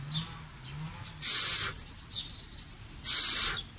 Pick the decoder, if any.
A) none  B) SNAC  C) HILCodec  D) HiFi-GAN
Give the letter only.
A